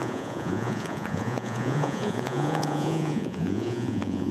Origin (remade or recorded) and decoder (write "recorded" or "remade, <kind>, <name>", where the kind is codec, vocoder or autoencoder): remade, vocoder, Vocos